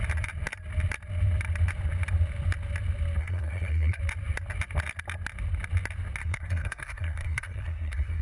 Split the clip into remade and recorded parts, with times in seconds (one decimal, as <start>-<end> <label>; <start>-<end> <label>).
0.0-3.2 recorded; 3.2-4.0 remade; 4.0-6.2 recorded; 6.2-8.2 remade